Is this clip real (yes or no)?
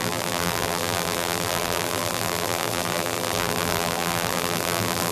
no